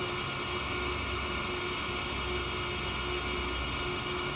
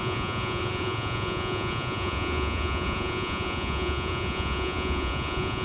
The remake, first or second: second